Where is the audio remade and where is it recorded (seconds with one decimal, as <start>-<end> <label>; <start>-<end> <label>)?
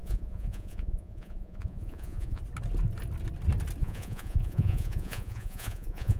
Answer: 0.0-2.4 remade; 2.4-3.8 recorded; 3.8-6.2 remade